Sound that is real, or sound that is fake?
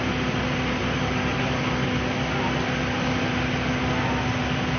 real